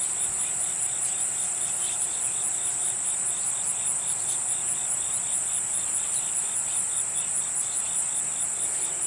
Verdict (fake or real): real